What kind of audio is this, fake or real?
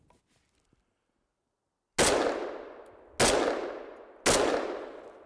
real